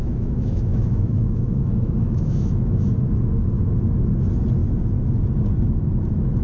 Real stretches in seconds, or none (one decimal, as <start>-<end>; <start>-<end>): 2.9-6.4